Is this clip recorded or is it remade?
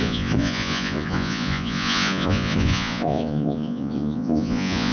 remade